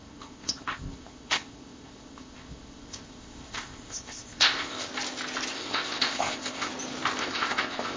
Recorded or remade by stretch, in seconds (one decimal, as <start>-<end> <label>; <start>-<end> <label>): 0.0-4.9 remade; 4.9-5.5 recorded; 5.5-6.7 remade; 6.7-7.2 recorded; 7.2-8.0 remade